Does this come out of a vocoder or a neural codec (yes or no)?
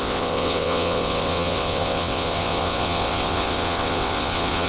yes